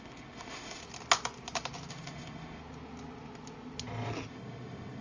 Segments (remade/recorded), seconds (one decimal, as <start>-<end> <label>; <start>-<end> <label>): 0.0-0.8 remade; 0.8-1.9 recorded; 1.9-2.6 remade; 2.6-4.3 recorded; 4.3-5.0 remade